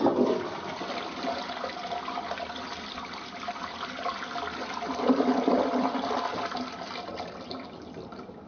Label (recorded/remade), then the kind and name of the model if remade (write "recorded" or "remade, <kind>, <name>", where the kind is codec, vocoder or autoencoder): recorded